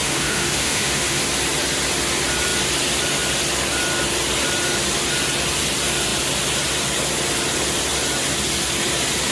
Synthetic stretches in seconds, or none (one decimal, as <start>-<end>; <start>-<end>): 0.0-1.2